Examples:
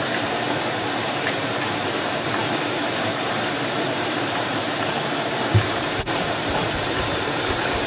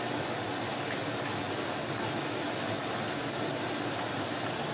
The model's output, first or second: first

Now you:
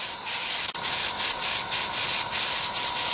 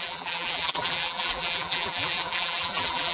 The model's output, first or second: second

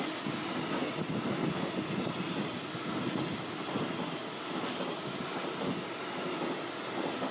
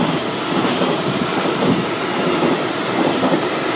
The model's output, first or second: second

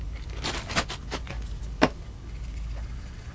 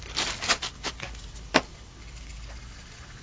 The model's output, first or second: second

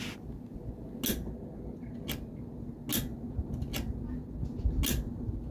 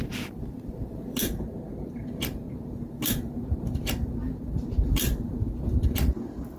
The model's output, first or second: second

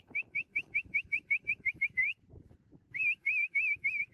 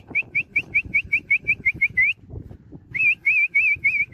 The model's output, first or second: first